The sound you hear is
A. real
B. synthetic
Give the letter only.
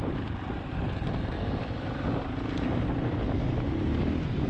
A